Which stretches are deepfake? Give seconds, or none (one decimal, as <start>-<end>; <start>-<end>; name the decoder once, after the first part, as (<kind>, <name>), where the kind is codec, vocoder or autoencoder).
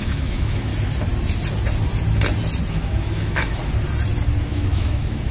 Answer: 0.0-0.7 (autoencoder, DAC-VAE); 2.7-3.6; 4.4-5.3